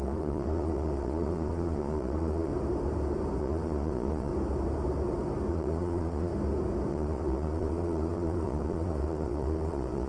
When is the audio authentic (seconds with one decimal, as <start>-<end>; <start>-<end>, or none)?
2.5-3.4; 4.3-5.5; 6.3-6.9